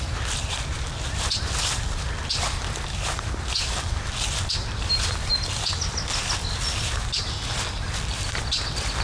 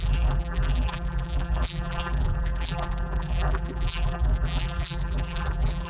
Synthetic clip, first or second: second